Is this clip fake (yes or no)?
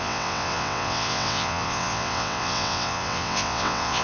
yes